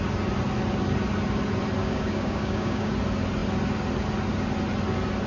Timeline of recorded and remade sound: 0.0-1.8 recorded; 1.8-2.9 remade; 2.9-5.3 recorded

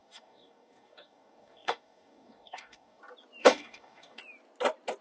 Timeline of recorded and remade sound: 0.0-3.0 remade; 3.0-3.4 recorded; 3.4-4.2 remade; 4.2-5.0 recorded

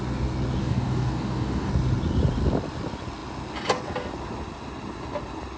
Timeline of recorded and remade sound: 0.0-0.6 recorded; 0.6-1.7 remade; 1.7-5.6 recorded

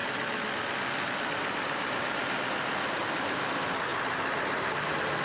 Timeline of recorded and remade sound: 0.0-5.2 recorded

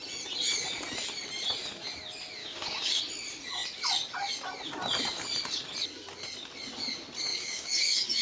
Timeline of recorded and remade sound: 0.0-2.4 recorded; 2.4-3.0 remade; 3.0-7.3 recorded; 7.3-8.2 remade